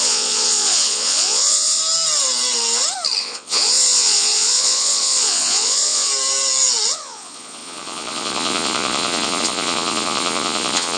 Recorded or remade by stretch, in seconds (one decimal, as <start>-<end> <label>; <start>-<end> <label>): 0.0-1.8 remade; 1.8-3.2 recorded; 3.2-6.1 remade; 6.1-6.9 recorded; 6.9-11.0 remade